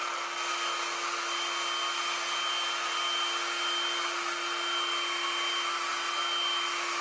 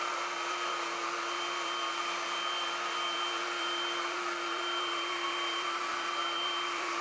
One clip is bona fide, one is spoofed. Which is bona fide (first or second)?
first